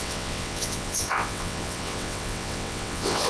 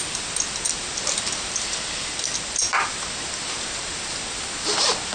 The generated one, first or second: first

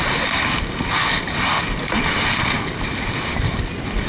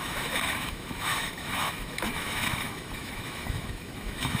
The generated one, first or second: second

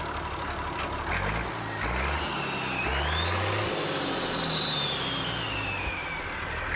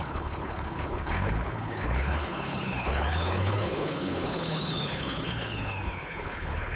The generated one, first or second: second